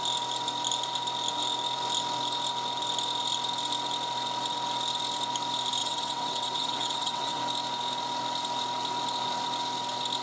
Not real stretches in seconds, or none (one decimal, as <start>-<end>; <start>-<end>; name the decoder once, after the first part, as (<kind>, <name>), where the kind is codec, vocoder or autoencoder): 5.8-7.4 (vocoder, WaveNeXt)